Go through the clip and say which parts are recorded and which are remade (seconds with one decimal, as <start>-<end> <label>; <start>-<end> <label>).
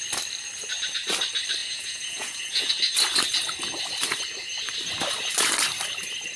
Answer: 0.0-1.6 recorded; 1.6-2.7 remade; 2.7-6.4 recorded